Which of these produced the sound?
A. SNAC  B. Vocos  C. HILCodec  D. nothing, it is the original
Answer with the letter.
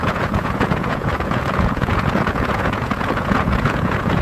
B